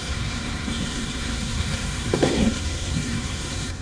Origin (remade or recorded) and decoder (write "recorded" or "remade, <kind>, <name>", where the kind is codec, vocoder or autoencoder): remade, codec, SNAC